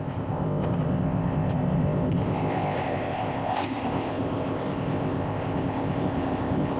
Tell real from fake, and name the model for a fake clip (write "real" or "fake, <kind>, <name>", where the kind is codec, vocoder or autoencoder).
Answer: fake, codec, ZipCodec